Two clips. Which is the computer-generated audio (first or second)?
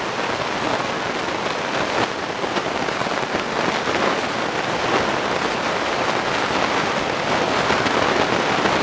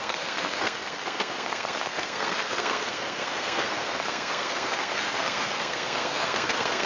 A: second